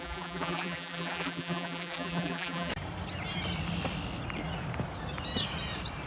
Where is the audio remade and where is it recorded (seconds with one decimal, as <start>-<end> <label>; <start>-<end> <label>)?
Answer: 0.0-2.7 remade; 2.7-6.1 recorded